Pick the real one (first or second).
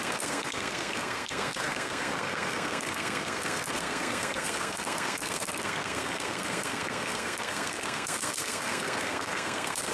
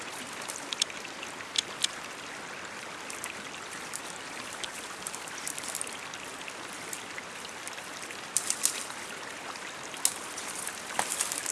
second